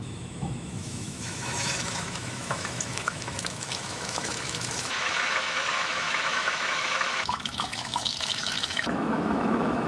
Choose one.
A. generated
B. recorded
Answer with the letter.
A